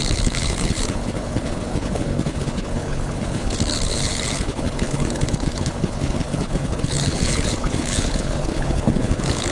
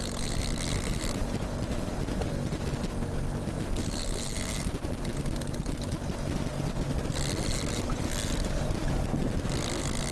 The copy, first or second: first